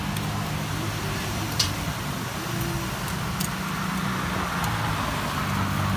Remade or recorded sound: recorded